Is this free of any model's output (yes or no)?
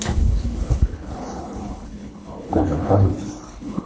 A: no